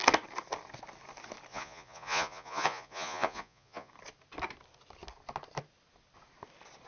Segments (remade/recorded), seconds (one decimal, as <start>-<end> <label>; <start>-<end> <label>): 0.0-1.5 recorded; 1.5-3.9 remade; 3.9-6.9 recorded